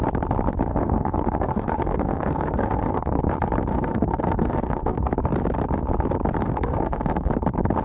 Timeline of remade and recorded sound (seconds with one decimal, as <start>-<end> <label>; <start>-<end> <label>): 0.0-0.7 recorded; 0.7-3.2 remade; 3.2-3.7 recorded; 3.7-5.1 remade; 5.1-6.4 recorded; 6.4-7.3 remade; 7.3-7.8 recorded